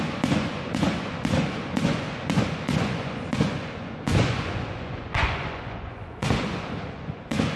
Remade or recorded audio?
remade